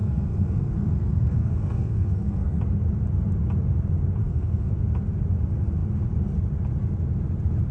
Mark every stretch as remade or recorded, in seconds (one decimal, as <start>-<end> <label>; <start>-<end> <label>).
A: 0.0-2.6 remade; 2.6-4.2 recorded; 4.2-4.7 remade; 4.7-7.7 recorded